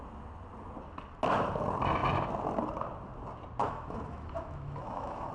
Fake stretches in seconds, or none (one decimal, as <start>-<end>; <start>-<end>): 3.6-5.3